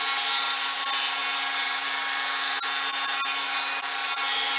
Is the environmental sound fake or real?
real